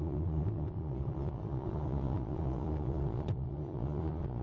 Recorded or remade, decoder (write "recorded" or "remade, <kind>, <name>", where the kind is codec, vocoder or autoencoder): remade, vocoder, Vocos